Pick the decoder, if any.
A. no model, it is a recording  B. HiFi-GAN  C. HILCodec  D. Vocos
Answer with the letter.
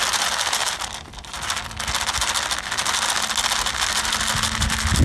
A